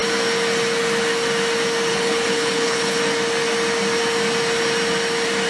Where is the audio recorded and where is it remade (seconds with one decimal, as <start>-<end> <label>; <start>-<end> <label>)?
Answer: 0.0-1.9 recorded; 1.9-3.0 remade; 3.0-5.5 recorded